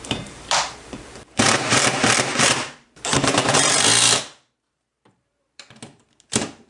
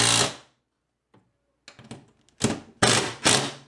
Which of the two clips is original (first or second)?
second